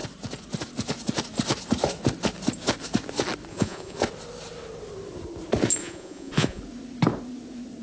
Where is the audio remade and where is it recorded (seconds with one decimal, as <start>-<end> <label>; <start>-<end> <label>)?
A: 0.0-3.5 recorded; 3.5-4.0 remade; 4.0-5.8 recorded; 5.8-6.6 remade; 6.6-7.8 recorded